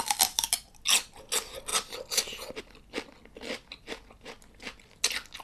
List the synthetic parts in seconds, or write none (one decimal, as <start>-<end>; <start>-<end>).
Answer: none